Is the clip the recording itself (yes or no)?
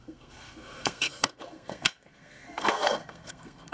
no